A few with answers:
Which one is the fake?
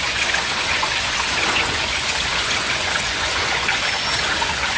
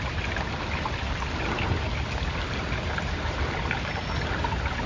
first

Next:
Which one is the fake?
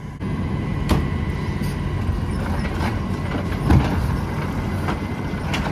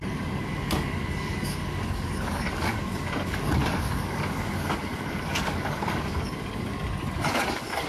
second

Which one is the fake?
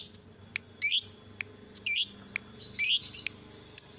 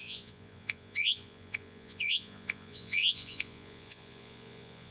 second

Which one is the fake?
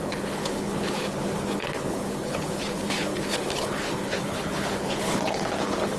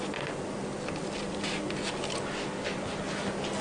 first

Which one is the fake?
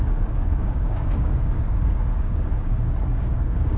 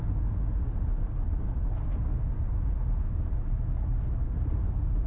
first